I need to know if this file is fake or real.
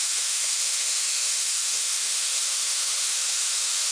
fake